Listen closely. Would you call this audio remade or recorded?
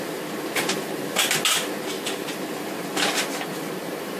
recorded